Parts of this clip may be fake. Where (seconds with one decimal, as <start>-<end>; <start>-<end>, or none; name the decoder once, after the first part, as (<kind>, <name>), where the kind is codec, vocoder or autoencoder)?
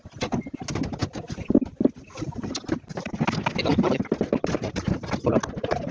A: none